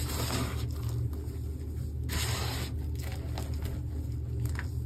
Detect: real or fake real